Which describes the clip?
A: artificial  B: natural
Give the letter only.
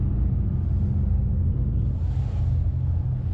B